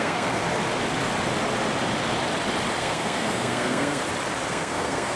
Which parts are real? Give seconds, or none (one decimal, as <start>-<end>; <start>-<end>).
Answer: 0.4-2.8; 4.0-4.5